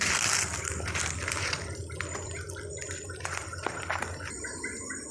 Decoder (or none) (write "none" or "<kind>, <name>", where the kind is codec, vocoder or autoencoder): none